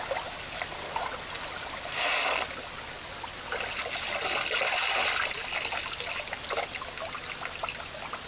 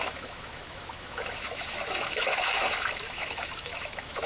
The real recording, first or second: first